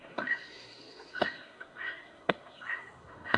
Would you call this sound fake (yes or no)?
yes